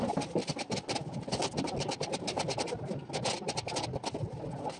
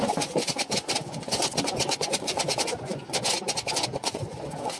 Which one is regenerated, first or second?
second